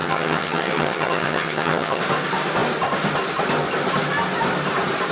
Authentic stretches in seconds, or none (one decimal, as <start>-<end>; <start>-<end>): 2.0-5.1